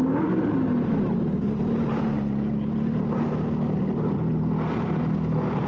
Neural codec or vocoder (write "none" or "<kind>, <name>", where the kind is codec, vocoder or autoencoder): none